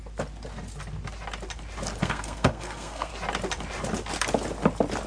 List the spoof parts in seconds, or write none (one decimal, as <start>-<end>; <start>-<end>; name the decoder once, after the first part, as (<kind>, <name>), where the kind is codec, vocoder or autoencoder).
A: 2.0-3.1 (codec, SNAC)